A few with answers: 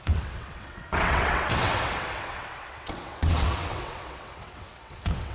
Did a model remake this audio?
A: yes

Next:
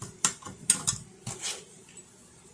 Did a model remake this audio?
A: no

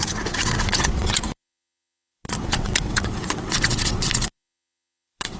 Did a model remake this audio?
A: yes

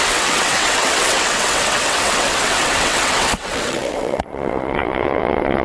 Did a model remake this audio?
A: yes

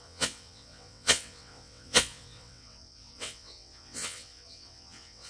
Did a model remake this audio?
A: yes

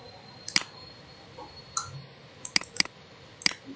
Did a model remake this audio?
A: no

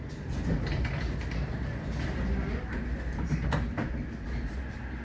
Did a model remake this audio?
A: no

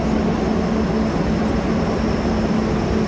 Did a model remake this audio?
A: no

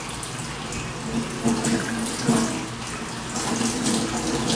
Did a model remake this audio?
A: no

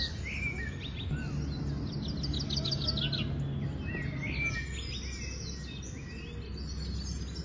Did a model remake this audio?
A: no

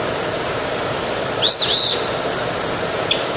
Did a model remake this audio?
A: no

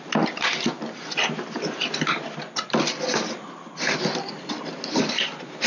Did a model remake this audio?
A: no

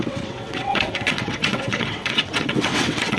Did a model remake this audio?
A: yes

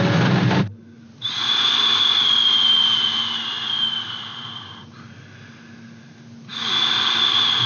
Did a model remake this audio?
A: no